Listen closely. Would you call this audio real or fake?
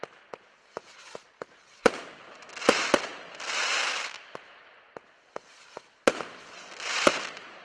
real